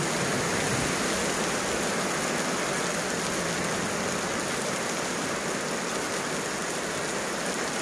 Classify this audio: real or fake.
real